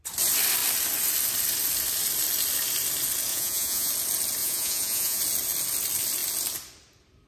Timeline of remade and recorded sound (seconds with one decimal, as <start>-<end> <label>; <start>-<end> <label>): 0.0-3.3 recorded; 3.3-3.9 remade; 3.9-4.4 recorded; 4.4-5.2 remade; 5.2-7.3 recorded